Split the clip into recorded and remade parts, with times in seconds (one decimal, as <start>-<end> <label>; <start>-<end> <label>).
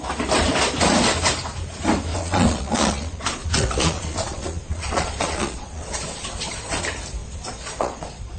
0.0-2.1 recorded; 2.1-6.8 remade; 6.8-7.2 recorded; 7.2-8.4 remade